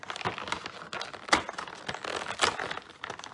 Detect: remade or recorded recorded